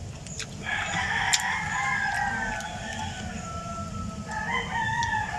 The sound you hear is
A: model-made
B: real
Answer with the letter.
B